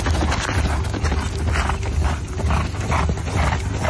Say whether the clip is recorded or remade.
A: recorded